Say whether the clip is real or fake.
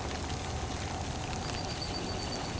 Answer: real